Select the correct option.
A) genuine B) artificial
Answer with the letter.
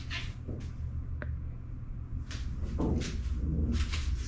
A